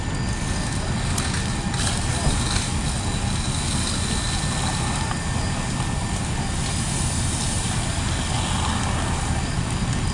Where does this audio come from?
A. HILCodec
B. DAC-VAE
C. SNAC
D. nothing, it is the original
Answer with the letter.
D